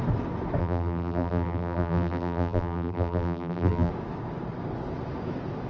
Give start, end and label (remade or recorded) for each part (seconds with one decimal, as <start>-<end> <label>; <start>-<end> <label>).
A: 0.0-0.6 recorded; 0.6-3.9 remade; 3.9-5.7 recorded